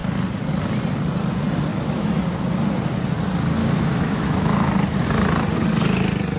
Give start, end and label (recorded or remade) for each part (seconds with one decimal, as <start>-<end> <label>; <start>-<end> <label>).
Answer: 0.0-1.7 recorded; 1.7-2.2 remade; 2.2-3.6 recorded; 3.6-4.7 remade; 4.7-6.4 recorded